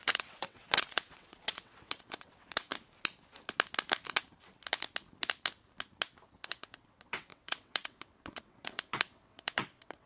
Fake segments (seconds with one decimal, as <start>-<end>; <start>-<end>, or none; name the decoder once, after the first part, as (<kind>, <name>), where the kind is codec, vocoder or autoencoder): 0.0-2.7 (vocoder, WaveNeXt); 6.3-10.1